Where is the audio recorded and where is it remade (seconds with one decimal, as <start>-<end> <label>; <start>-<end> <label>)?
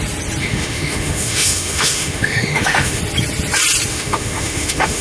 0.0-0.4 recorded; 0.4-3.0 remade; 3.0-3.9 recorded; 3.9-5.0 remade